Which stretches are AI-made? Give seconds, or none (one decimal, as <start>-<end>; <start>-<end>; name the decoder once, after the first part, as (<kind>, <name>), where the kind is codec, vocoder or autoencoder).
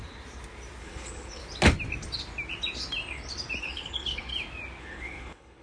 0.8-1.4 (codec, HILCodec); 3.6-4.3; 4.8-5.6